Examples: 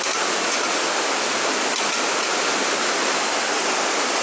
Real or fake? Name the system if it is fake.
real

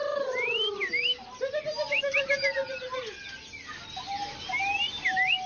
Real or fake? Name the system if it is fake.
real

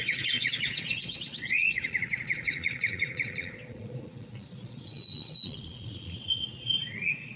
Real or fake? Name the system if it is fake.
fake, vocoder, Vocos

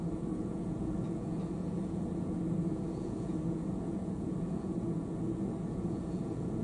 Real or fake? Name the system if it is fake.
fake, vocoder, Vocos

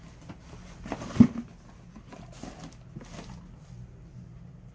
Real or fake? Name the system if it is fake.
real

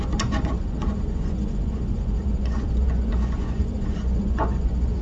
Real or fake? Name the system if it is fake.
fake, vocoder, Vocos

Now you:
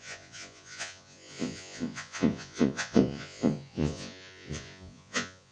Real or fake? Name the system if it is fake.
fake, vocoder, Vocos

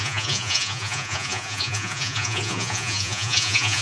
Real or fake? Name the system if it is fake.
fake, vocoder, Vocos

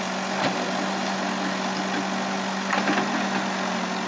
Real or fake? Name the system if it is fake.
real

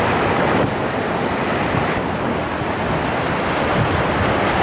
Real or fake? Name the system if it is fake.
real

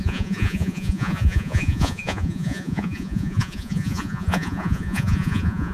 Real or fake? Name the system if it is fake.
fake, vocoder, Vocos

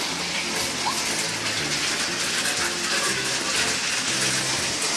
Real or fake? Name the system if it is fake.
real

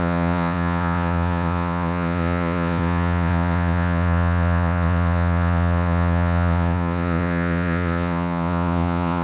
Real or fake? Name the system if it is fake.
fake, vocoder, Vocos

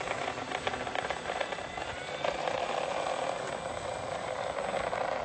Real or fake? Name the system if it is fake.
real